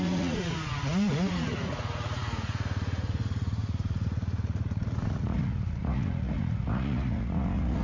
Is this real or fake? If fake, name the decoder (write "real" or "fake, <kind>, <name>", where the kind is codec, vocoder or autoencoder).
fake, vocoder, Vocos